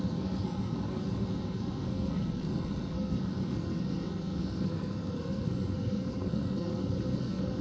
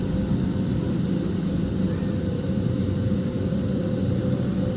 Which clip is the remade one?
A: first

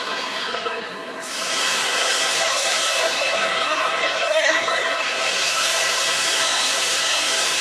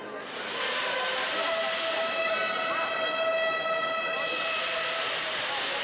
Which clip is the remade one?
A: first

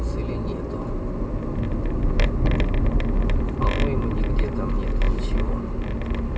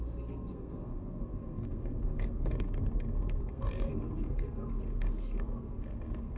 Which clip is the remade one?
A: second